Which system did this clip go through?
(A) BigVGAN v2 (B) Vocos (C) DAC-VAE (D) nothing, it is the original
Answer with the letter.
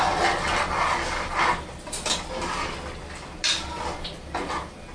D